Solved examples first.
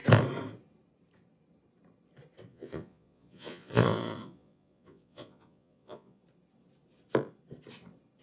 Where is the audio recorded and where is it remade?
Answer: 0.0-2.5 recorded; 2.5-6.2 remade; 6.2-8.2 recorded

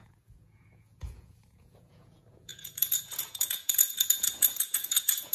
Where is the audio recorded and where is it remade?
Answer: 0.0-5.3 remade

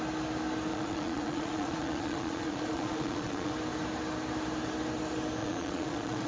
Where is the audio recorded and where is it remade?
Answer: 0.0-0.7 recorded; 0.7-3.5 remade; 3.5-5.4 recorded; 5.4-6.3 remade

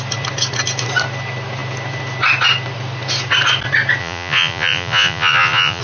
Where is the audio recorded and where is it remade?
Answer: 0.0-4.0 recorded; 4.0-5.8 remade